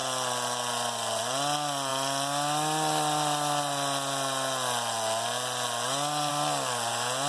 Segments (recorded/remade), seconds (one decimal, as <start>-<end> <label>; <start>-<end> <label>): 0.0-7.3 recorded